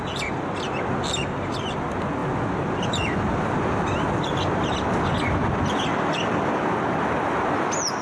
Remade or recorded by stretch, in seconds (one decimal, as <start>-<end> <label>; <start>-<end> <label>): 0.0-8.0 recorded